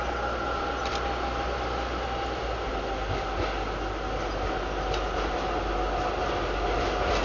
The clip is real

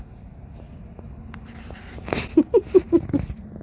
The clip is real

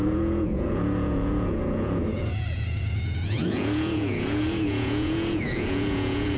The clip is fake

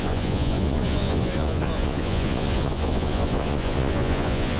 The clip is fake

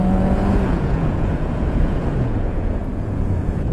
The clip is fake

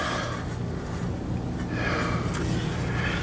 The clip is real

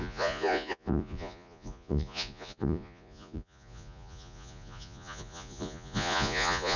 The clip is fake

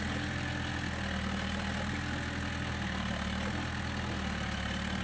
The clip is real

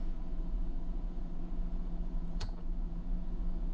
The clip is fake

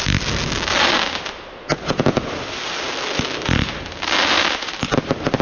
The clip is real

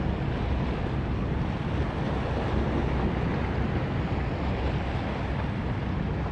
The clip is real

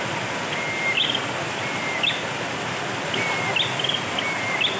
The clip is real